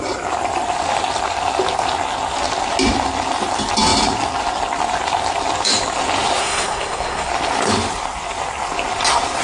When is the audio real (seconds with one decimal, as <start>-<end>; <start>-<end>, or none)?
0.0-6.4; 7.3-9.4